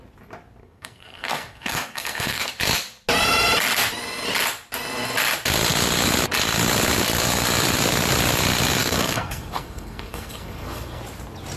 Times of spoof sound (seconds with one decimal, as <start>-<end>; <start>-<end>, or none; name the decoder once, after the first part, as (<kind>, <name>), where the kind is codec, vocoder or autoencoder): 0.6-2.5 (codec, SNAC); 8.8-11.0